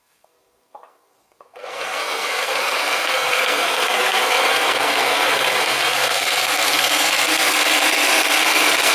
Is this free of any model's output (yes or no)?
no